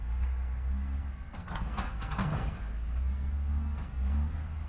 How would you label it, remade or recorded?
remade